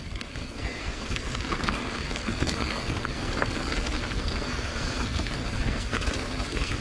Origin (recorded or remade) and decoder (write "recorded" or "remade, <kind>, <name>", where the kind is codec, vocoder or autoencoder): remade, codec, SNAC